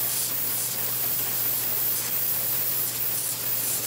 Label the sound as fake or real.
real